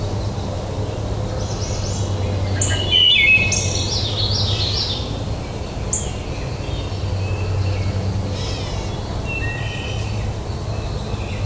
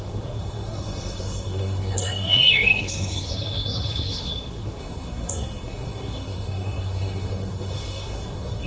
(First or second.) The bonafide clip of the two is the first